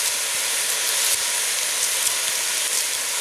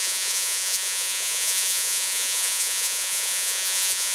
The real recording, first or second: first